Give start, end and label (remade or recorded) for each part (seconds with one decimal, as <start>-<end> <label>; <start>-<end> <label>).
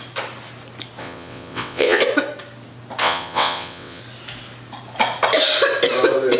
0.0-1.0 recorded; 1.0-2.0 remade; 2.0-3.0 recorded; 3.0-4.0 remade; 4.0-6.4 recorded